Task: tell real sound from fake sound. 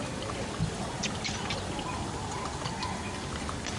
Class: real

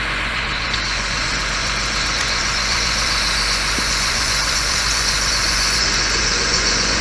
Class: fake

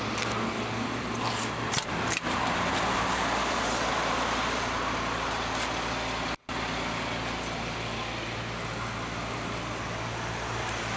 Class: real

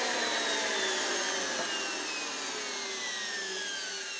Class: real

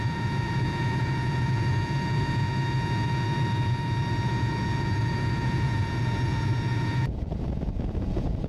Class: fake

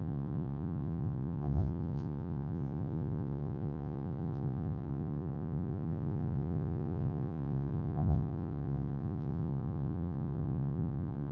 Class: fake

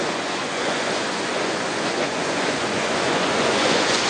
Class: fake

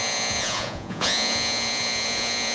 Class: fake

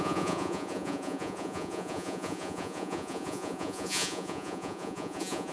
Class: fake